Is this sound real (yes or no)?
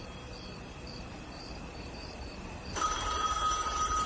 no